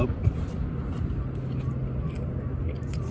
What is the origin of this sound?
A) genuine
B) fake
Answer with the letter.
A